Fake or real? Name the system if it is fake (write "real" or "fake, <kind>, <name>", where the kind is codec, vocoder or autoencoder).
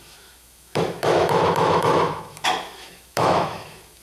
fake, autoencoder, DAC-VAE